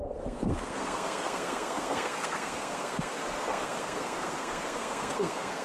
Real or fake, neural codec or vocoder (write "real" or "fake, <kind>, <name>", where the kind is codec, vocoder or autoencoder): fake, codec, SNAC